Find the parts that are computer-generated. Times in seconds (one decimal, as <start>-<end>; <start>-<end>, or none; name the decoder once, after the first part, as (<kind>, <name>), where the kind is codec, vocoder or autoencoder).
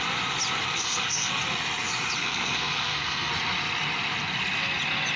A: 0.8-1.3 (codec, SNAC); 2.2-3.3